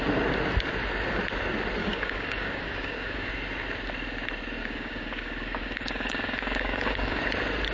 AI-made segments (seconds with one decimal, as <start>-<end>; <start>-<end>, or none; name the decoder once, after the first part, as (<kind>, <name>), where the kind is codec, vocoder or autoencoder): 1.8-3.3 (codec, DAC); 4.6-7.2